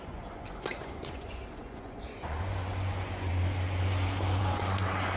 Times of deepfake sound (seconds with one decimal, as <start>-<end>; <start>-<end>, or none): 0.0-3.3; 4.4-5.2